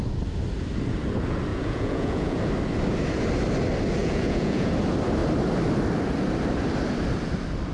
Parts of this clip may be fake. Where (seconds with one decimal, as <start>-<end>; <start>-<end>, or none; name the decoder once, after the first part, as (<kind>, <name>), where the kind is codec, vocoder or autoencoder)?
1.5-2.5 (vocoder, Vocos); 4.0-4.7